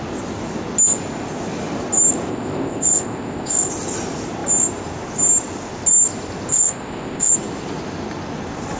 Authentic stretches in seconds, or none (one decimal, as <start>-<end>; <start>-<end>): 0.0-2.3; 3.7-6.5; 7.3-8.8